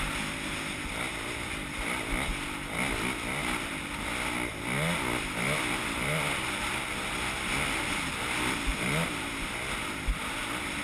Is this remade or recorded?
recorded